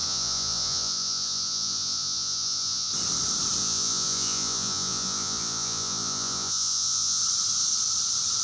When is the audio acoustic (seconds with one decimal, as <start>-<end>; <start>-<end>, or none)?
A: 2.9-3.6; 7.2-8.4

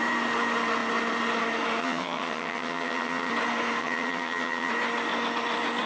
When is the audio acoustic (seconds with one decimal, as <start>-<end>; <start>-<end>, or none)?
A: 0.0-1.8; 3.3-3.8; 4.7-5.9

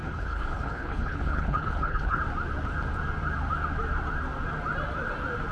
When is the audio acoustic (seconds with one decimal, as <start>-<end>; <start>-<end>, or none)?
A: 2.2-5.5

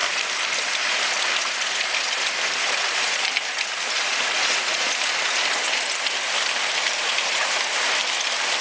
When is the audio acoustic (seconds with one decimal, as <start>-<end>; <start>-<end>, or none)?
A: 0.0-1.0; 8.0-8.6